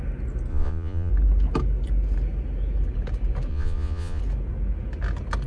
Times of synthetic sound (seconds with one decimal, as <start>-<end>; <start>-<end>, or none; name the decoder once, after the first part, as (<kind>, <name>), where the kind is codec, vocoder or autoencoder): 0.5-1.1 (vocoder, Vocos); 3.5-4.2